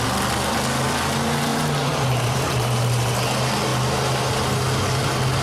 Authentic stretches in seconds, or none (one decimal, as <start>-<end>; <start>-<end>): 0.0-1.5; 3.1-5.4